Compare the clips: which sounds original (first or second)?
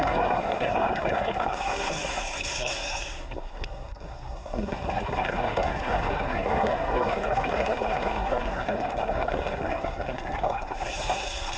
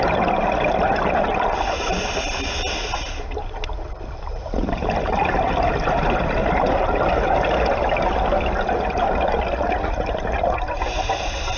second